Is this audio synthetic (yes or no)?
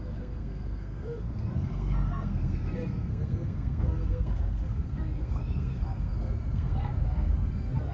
yes